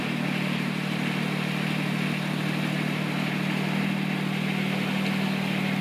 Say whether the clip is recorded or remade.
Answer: recorded